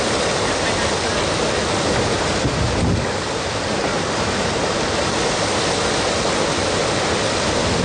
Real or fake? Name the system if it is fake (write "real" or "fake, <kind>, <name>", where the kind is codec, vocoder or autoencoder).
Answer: real